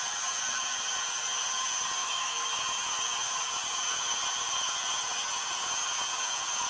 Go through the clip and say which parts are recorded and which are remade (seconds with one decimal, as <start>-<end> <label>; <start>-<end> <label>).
0.0-2.0 recorded; 2.0-2.5 remade; 2.5-6.7 recorded

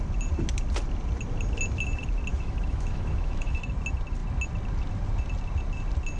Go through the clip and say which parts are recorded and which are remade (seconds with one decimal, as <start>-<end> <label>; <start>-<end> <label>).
0.0-2.3 recorded; 2.3-3.7 remade; 3.7-6.2 recorded

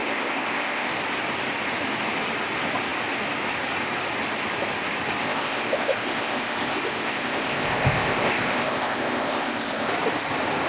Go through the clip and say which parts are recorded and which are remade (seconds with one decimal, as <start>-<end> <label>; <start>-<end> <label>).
0.0-0.9 remade; 0.9-5.2 recorded; 5.2-9.9 remade; 9.9-10.7 recorded

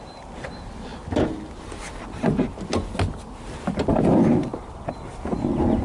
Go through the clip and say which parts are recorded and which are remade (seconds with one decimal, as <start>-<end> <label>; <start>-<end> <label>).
0.0-5.8 recorded